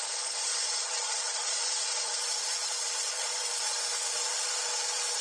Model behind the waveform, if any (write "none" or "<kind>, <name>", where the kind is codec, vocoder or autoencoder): vocoder, Vocos